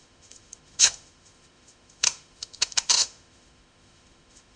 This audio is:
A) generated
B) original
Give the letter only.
A